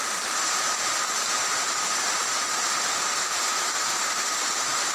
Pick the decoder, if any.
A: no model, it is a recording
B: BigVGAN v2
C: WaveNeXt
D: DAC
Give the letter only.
B